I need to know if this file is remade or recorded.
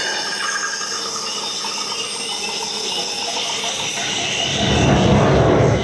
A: recorded